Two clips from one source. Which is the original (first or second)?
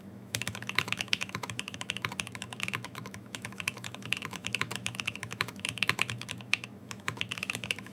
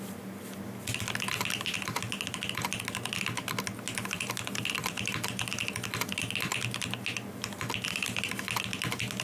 second